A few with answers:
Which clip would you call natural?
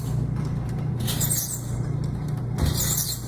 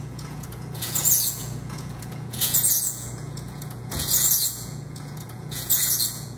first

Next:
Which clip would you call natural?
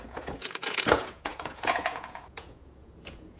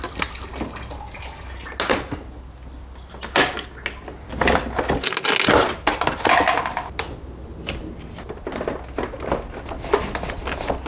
second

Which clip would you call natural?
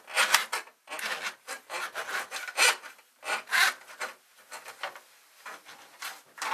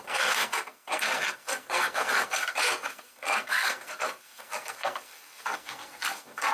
first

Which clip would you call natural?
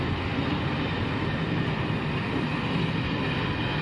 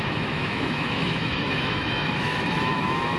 first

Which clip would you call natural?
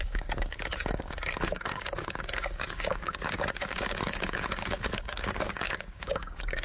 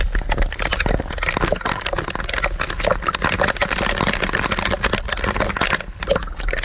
second